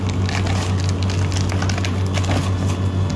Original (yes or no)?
yes